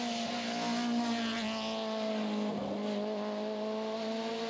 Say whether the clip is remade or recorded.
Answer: recorded